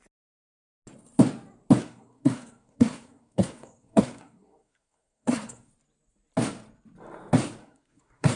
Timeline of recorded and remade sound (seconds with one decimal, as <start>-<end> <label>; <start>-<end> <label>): 0.0-1.8 recorded; 1.8-5.7 remade; 5.7-7.6 recorded; 7.6-8.4 remade